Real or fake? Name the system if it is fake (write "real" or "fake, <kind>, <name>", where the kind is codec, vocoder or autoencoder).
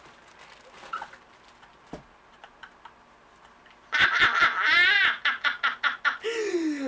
real